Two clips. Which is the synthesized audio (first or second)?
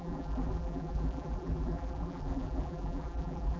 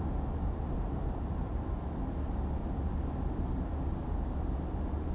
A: first